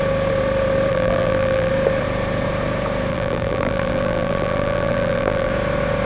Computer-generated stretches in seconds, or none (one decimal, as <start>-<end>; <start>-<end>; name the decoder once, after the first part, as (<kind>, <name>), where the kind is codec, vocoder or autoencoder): 0.9-1.7 (vocoder, BigVGAN v2); 3.1-5.5